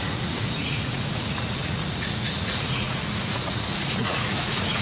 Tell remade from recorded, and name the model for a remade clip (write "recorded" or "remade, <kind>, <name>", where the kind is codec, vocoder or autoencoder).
remade, vocoder, Vocos